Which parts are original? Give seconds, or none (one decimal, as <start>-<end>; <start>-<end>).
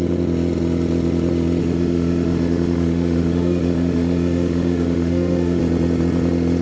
0.0-1.6; 5.6-6.6